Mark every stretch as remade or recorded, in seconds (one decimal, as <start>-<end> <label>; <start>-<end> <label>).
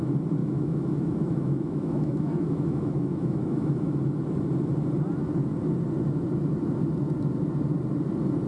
0.0-0.4 recorded; 0.4-3.8 remade; 3.8-8.5 recorded